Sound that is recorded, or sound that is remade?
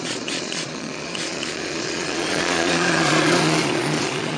remade